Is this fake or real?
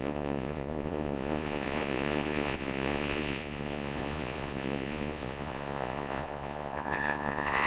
fake